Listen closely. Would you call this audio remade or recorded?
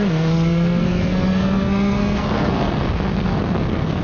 remade